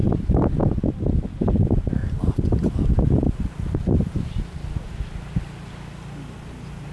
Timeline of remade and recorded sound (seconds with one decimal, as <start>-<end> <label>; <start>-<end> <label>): 0.0-6.9 recorded